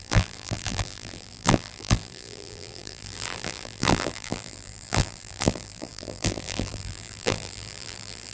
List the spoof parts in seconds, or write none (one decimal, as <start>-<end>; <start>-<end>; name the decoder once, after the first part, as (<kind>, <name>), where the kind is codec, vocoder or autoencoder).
0.0-8.3 (vocoder, BigVGAN v2)